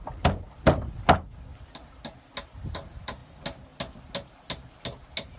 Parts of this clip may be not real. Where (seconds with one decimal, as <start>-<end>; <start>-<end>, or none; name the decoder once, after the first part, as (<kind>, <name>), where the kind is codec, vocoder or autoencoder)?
none